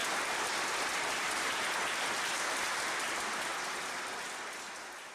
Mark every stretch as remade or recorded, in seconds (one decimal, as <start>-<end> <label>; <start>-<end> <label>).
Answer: 0.0-5.1 recorded